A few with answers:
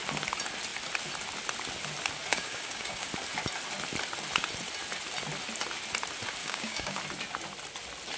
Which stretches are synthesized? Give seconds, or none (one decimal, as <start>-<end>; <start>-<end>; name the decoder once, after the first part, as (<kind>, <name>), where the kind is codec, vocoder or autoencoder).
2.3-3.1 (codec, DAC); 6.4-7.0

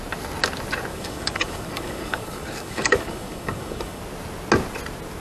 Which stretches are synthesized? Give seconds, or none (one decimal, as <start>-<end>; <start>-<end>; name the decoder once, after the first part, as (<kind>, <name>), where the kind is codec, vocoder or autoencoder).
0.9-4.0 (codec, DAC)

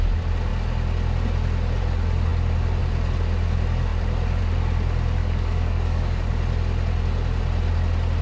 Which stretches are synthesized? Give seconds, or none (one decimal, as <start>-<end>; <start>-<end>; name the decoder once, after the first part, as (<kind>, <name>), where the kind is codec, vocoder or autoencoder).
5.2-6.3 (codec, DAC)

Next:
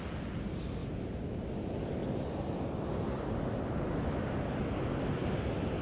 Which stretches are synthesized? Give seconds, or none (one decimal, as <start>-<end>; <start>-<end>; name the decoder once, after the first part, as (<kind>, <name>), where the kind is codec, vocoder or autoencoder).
none